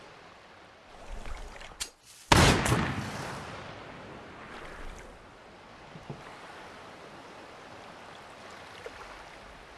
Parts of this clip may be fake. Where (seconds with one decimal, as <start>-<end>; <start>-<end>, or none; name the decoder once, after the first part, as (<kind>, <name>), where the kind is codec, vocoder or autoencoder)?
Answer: 0.0-1.8 (vocoder, BigVGAN v2); 5.1-9.8